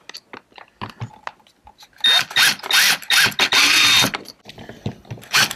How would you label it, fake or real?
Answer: real